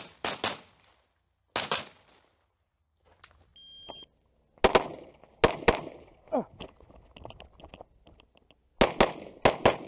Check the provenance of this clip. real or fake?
real